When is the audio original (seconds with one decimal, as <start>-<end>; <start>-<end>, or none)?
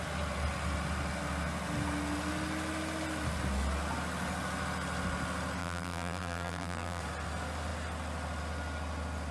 0.0-5.6; 7.0-9.3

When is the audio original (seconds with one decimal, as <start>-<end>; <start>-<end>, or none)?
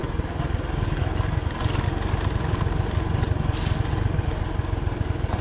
0.0-5.4